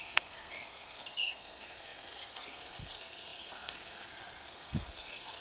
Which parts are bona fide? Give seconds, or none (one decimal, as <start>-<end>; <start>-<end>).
none